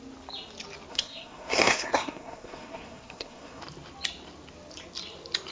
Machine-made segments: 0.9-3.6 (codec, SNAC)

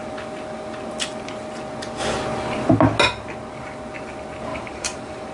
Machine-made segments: 4.5-5.3 (vocoder, BigVGAN v2)

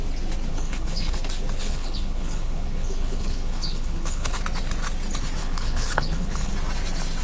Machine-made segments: 0.5-1.1 (codec, HILCodec); 1.6-4.4; 5.4-6.5

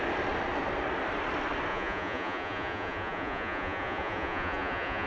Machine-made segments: 1.7-5.1 (vocoder, Vocos)

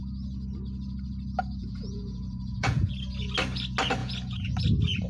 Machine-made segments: 1.6-2.9 (vocoder, Vocos); 4.0-4.5

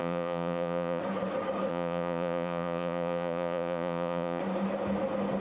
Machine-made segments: 0.0-1.0 (vocoder, Vocos); 1.7-4.4

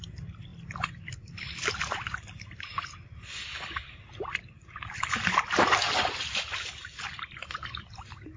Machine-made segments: none

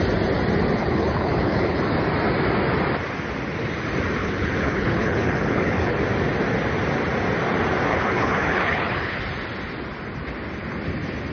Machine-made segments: 0.8-1.8 (codec, HILCodec); 4.2-6.0; 7.9-9.2